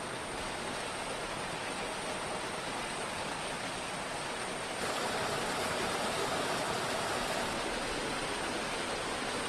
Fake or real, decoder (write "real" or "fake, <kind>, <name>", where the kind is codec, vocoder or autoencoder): real